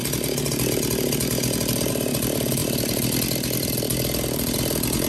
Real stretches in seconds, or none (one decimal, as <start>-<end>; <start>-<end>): 0.0-2.6; 3.7-5.1